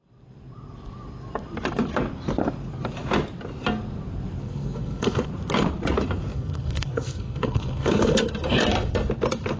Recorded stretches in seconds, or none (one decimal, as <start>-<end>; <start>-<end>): 0.0-4.4; 5.3-6.3; 8.3-9.6